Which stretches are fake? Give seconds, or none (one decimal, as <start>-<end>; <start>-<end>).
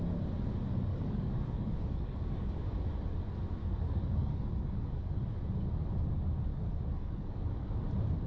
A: 0.9-2.6; 3.6-5.2; 6.5-7.7